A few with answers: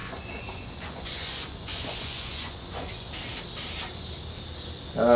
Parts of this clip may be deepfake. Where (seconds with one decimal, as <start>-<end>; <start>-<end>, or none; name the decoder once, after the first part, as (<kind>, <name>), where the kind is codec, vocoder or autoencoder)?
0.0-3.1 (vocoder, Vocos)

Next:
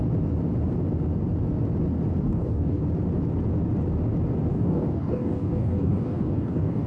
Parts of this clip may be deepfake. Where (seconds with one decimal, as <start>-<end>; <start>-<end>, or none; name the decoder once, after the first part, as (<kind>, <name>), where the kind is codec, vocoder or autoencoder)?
2.2-2.8 (codec, DAC); 4.5-6.9

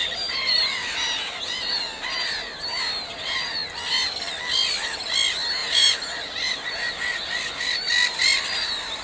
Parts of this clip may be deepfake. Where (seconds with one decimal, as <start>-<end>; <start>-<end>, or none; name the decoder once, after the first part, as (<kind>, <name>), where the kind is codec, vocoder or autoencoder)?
0.0-1.4 (vocoder, BigVGAN v2); 5.6-6.9